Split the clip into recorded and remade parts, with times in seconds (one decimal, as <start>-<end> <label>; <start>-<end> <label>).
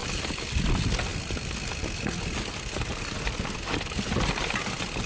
0.0-5.1 recorded